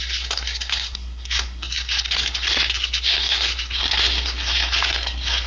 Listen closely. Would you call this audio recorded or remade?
remade